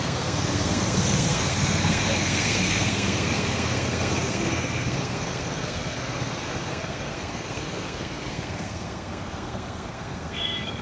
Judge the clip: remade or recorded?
remade